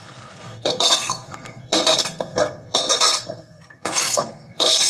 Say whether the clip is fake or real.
fake